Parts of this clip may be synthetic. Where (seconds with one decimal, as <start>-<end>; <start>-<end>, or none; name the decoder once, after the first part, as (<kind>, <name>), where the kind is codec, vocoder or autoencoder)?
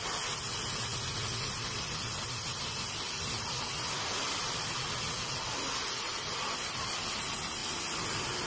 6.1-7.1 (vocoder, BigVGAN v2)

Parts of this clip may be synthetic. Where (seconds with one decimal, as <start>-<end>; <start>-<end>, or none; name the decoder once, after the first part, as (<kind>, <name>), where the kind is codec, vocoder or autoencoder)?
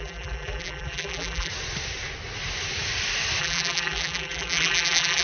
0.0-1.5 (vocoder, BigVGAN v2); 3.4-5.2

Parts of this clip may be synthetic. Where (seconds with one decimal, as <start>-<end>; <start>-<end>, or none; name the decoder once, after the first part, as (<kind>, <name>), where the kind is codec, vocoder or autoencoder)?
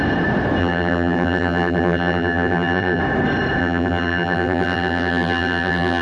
0.6-3.0 (vocoder, BigVGAN v2); 3.6-6.0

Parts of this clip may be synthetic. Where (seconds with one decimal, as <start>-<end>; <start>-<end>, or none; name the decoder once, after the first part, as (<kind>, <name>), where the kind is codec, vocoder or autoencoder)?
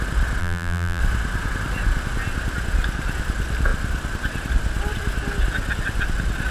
0.4-1.0 (vocoder, BigVGAN v2)